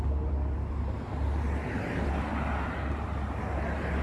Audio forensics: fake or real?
real